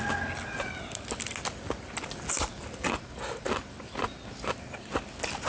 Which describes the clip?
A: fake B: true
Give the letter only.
B